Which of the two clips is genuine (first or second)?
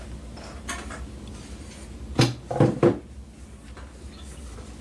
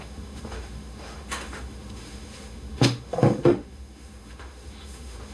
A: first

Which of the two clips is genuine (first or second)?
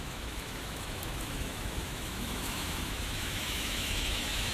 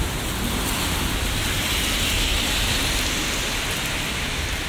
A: second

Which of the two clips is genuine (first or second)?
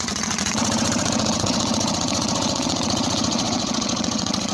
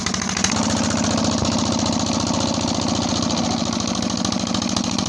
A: second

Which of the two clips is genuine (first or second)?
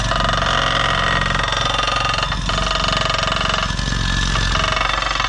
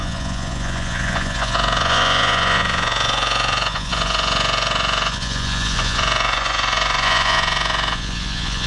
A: first